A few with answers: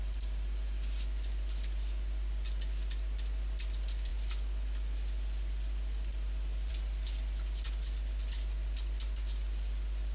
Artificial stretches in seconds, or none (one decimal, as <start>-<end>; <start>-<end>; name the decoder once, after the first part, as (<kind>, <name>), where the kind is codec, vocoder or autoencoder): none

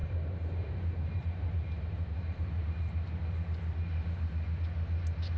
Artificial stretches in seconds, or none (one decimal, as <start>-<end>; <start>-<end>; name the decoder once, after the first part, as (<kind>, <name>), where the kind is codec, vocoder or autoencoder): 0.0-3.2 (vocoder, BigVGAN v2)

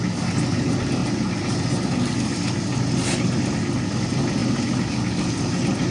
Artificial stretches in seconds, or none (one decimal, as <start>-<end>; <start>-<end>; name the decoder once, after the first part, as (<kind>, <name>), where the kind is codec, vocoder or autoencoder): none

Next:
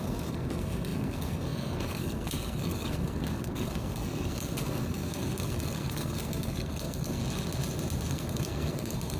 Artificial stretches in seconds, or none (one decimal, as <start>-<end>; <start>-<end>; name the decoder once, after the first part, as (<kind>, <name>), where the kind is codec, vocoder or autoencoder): 0.0-7.2 (codec, SNAC); 8.1-9.2

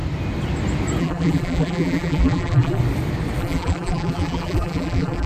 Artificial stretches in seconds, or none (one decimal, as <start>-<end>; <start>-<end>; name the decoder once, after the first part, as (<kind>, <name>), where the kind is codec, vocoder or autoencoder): 1.0-2.8 (vocoder, BigVGAN v2); 3.4-5.3

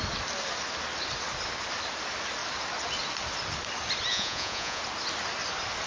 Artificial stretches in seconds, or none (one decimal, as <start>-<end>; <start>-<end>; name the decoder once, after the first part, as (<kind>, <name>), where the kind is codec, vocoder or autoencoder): 4.1-4.8 (vocoder, Vocos)